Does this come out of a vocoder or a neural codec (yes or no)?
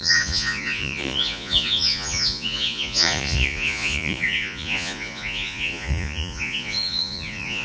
yes